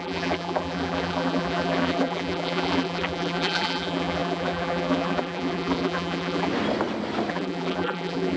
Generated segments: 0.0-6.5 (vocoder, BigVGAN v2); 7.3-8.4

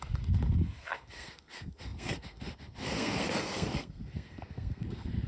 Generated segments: 0.0-5.3 (codec, SNAC)

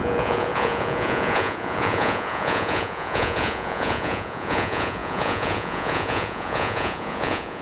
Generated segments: 0.0-7.6 (vocoder, Vocos)

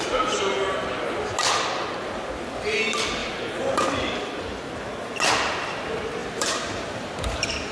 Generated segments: 3.2-3.8 (vocoder, BigVGAN v2); 6.2-7.7

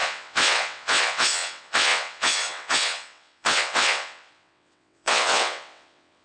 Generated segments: 0.0-6.2 (vocoder, WaveNeXt)

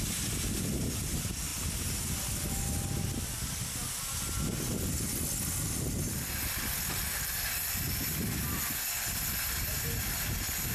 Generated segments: none